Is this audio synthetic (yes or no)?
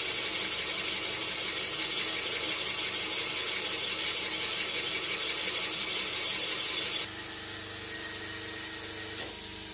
no